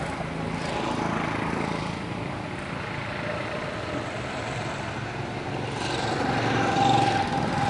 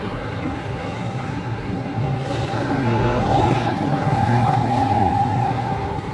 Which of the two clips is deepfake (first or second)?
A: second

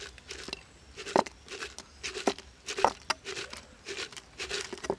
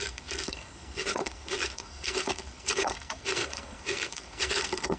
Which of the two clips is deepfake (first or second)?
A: second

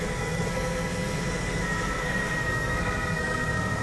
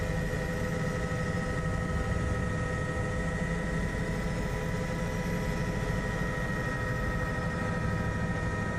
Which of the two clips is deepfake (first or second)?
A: first